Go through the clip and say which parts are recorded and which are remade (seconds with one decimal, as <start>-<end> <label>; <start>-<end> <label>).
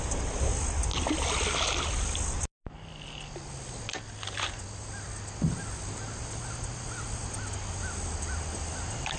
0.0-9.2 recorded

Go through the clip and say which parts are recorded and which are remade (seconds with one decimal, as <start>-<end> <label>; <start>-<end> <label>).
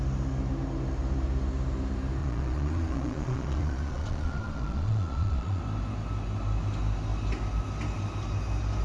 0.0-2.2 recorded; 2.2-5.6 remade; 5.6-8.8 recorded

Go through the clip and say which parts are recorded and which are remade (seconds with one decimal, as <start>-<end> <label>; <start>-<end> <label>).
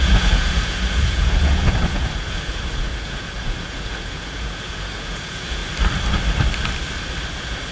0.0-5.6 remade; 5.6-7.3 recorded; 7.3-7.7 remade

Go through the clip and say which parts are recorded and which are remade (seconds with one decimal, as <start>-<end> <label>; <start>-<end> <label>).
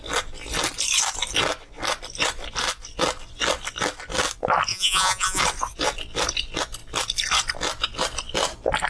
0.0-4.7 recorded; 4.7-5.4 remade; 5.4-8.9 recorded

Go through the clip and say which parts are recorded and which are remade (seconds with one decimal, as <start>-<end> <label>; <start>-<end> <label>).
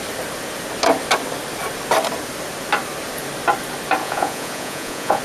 0.0-4.0 recorded; 4.0-5.2 remade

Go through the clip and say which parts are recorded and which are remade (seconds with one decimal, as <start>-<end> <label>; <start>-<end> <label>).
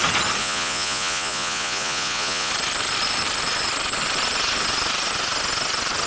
0.0-0.4 recorded; 0.4-2.5 remade; 2.5-6.1 recorded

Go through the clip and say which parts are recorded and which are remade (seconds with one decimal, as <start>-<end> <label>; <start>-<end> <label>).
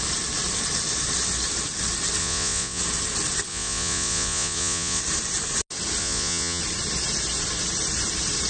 0.0-2.2 recorded; 2.2-2.8 remade; 2.8-3.5 recorded; 3.5-5.0 remade; 5.0-6.0 recorded; 6.0-6.6 remade; 6.6-8.5 recorded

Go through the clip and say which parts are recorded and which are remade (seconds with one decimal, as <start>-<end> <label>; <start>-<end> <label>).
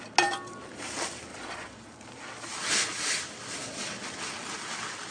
0.0-1.3 recorded; 1.3-1.9 remade; 1.9-5.1 recorded